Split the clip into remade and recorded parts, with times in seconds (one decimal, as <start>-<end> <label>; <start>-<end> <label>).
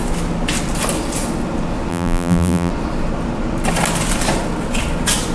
0.0-1.9 recorded; 1.9-2.7 remade; 2.7-5.3 recorded